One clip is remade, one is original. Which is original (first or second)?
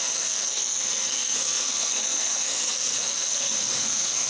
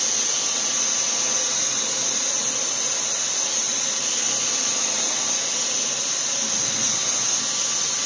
second